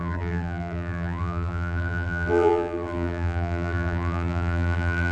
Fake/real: fake